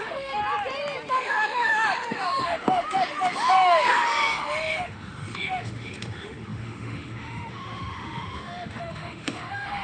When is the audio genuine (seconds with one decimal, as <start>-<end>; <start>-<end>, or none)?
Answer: 0.4-1.1